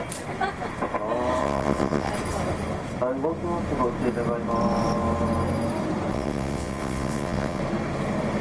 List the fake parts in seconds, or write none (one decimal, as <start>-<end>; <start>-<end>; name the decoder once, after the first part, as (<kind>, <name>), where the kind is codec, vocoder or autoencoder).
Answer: 1.4-2.1 (vocoder, WaveNeXt); 6.1-7.6